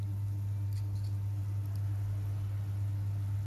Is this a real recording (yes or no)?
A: yes